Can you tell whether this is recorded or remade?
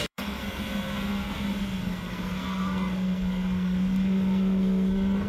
remade